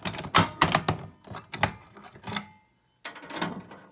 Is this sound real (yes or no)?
yes